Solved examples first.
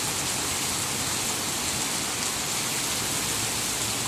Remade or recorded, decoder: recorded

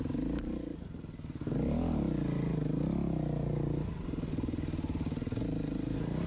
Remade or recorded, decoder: recorded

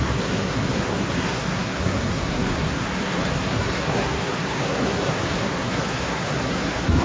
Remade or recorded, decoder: remade, codec, SNAC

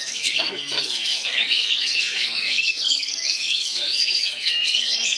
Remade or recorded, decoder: remade, codec, SNAC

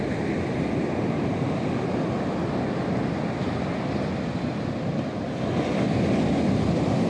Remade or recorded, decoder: recorded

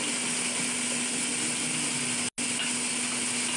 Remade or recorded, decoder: recorded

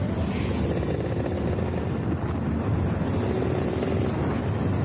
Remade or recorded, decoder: recorded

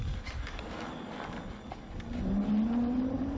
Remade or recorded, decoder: recorded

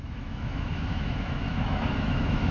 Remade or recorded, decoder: remade, autoencoder, DAC-VAE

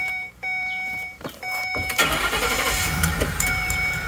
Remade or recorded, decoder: remade, vocoder, BigVGAN v2